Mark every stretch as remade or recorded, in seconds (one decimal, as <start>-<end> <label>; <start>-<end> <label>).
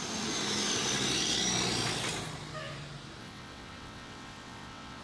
0.0-3.2 recorded; 3.2-5.0 remade